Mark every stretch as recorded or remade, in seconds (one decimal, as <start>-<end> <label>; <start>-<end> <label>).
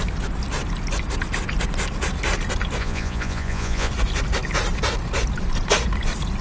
0.0-2.8 recorded; 2.8-3.9 remade; 3.9-6.4 recorded